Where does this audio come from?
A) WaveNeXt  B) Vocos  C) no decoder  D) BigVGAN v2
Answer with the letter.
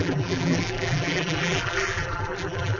D